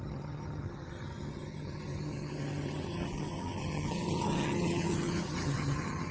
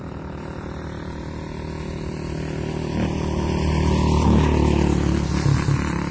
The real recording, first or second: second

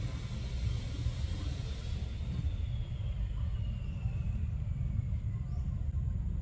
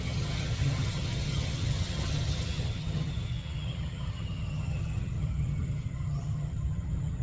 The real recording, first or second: first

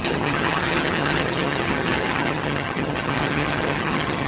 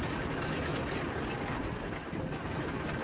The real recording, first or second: second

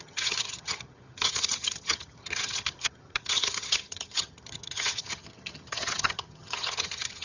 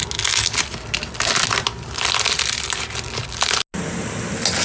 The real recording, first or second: second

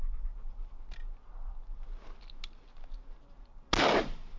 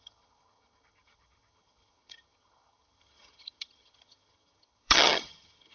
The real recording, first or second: first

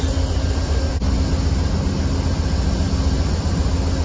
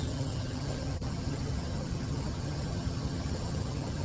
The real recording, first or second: first